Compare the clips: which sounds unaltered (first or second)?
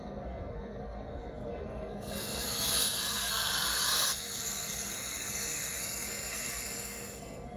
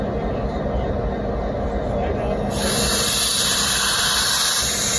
second